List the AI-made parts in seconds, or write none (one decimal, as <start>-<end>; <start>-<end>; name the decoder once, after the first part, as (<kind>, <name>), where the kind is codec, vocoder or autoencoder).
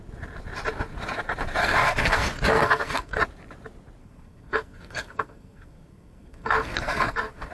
1.6-3.2 (codec, SNAC); 4.0-7.5